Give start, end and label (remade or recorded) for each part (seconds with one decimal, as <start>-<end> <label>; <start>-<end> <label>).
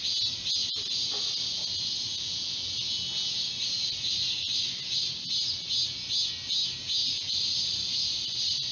0.0-7.0 recorded; 7.0-8.7 remade